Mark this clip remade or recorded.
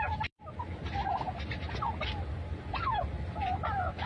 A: recorded